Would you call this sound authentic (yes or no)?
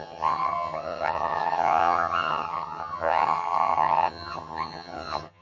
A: no